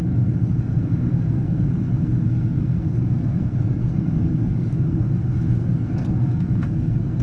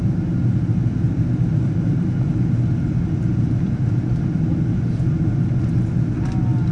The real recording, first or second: second